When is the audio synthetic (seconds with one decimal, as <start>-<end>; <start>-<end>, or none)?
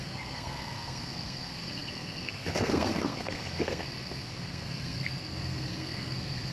0.0-6.5